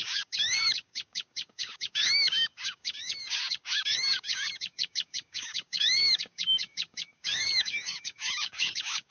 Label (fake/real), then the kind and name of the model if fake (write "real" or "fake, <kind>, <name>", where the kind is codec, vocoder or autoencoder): fake, codec, DAC